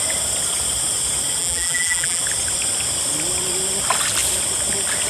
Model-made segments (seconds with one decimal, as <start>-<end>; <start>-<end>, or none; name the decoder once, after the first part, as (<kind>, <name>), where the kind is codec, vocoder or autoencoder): 1.4-2.2 (vocoder, BigVGAN v2)